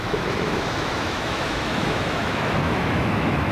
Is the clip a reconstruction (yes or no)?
yes